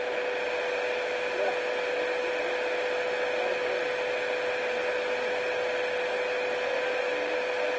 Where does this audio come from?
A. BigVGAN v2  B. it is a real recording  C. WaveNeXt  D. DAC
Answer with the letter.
B